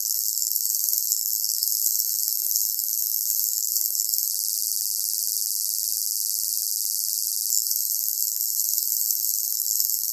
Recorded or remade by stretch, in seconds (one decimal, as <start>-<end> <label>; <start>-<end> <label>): 0.0-4.3 remade; 4.3-7.5 recorded; 7.5-10.1 remade